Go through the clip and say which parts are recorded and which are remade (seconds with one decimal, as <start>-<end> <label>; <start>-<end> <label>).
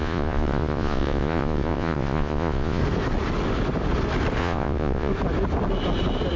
0.0-2.8 remade; 2.8-4.4 recorded; 4.4-5.1 remade; 5.1-6.4 recorded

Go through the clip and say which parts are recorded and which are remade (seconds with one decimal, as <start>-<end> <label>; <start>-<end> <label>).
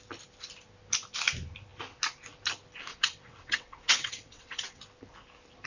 0.0-2.9 recorded; 2.9-4.8 remade; 4.8-5.7 recorded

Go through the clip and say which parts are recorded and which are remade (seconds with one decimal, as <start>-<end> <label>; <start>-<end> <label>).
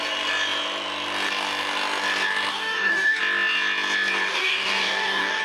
0.0-2.5 recorded; 2.5-3.2 remade; 3.2-4.3 recorded; 4.3-5.4 remade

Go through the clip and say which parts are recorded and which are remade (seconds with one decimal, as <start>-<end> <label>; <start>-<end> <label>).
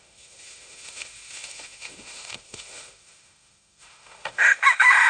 0.0-5.1 remade